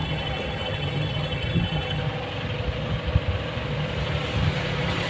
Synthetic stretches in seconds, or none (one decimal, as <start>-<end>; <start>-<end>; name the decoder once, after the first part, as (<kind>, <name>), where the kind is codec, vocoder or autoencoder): 0.0-2.0 (vocoder, HiFi-GAN)